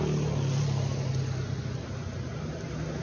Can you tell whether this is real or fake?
real